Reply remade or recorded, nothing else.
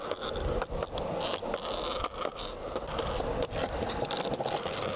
recorded